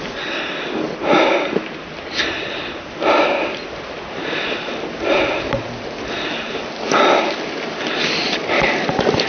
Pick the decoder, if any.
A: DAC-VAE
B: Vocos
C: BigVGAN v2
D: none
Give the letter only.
D